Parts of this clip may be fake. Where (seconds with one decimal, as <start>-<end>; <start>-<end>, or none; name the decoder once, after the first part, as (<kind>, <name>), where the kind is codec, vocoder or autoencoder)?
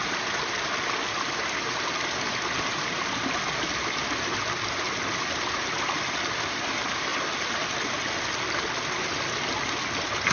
none